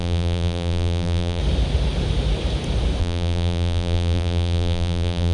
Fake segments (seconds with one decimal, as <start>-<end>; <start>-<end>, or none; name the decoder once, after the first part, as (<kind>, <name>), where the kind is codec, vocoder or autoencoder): 0.0-1.4 (vocoder, BigVGAN v2); 3.0-5.3